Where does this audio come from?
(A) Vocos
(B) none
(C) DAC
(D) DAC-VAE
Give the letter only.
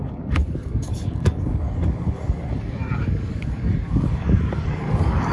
C